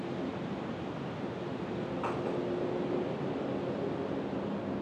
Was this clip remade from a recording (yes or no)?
no